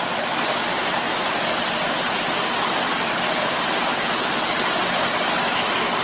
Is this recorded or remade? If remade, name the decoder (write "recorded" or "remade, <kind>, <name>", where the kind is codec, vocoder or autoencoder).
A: recorded